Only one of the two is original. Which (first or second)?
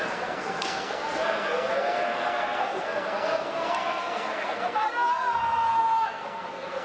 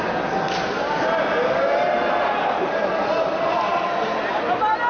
second